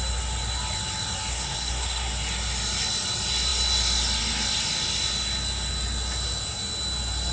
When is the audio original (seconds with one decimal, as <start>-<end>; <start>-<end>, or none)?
0.0-1.3; 2.1-7.3